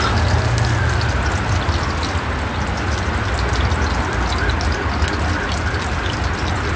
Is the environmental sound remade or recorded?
recorded